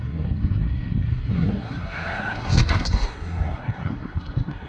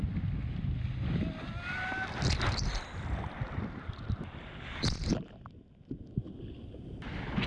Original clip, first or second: second